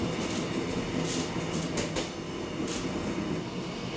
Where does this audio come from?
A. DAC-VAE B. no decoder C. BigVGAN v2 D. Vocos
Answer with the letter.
B